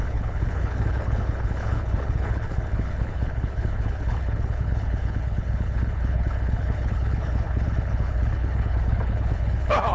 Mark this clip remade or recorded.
remade